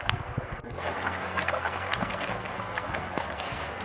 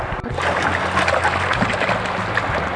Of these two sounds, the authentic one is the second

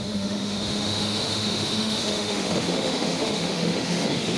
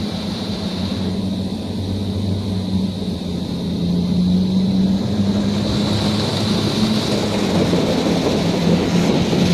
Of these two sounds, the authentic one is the second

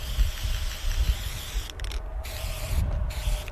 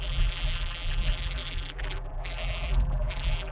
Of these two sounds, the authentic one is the first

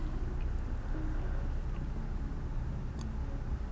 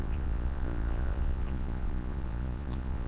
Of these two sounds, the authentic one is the first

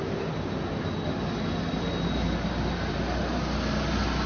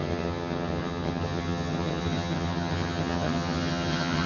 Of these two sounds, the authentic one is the first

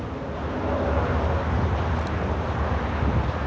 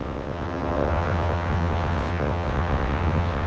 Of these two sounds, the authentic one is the first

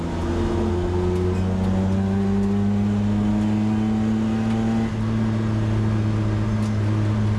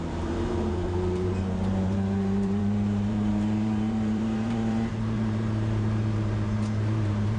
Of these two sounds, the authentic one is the first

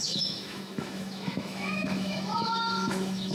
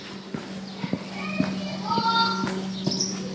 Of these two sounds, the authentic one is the second